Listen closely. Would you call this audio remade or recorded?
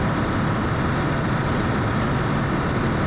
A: recorded